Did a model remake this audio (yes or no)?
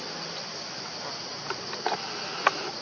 no